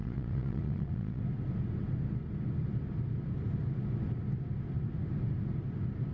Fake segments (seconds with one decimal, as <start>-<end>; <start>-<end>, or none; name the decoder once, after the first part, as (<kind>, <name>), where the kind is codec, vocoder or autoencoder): 0.0-1.2 (vocoder, Vocos)